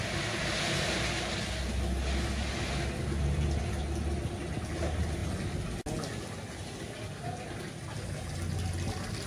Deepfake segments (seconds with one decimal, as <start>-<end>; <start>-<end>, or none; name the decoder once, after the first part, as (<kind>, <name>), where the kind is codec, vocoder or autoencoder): 2.4-3.8 (vocoder, BigVGAN v2)